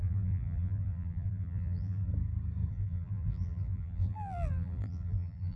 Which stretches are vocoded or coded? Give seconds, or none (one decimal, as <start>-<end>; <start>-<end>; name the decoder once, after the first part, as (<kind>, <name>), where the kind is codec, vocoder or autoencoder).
0.0-2.1 (vocoder, BigVGAN v2); 2.7-5.6